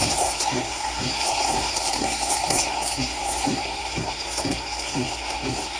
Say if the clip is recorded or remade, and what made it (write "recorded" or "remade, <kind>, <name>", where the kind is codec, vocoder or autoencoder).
remade, codec, SNAC